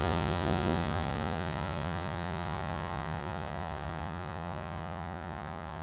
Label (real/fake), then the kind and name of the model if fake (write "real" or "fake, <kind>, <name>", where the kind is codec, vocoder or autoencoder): fake, vocoder, Vocos